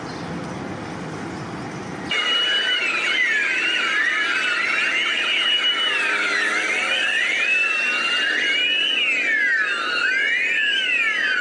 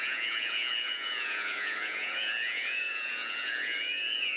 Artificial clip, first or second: second